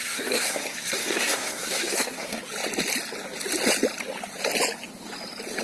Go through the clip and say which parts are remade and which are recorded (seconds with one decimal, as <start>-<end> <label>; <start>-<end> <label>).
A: 0.0-2.4 remade; 2.4-5.6 recorded